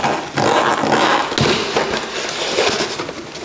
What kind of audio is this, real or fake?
real